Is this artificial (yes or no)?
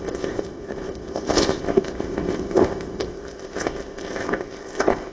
yes